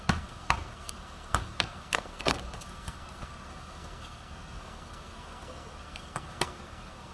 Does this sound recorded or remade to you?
remade